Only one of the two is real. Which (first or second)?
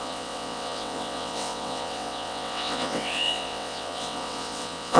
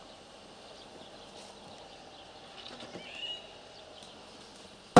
second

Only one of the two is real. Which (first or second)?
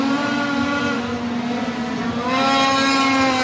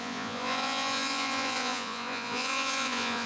first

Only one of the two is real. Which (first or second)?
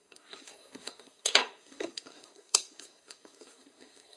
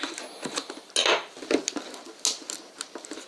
second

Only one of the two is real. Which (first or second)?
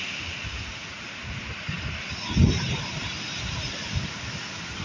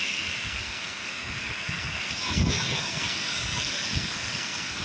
first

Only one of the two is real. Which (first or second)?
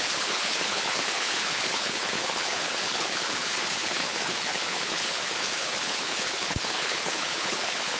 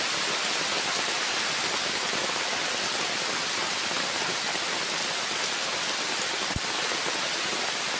second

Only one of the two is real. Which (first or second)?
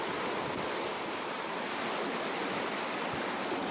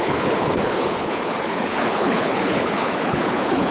first